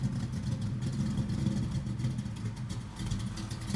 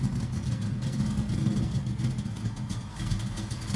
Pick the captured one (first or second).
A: first